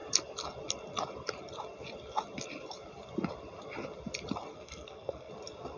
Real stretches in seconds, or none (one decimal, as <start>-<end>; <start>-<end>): 0.0-4.5; 5.3-5.8

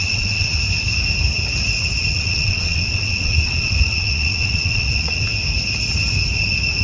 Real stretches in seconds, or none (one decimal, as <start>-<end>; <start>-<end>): 0.5-2.1; 5.3-6.8

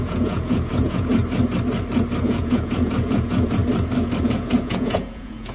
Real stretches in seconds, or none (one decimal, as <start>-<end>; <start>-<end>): 1.2-2.2; 3.6-4.2

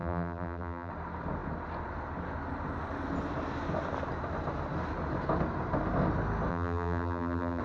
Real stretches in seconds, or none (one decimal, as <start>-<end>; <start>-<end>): 0.9-6.5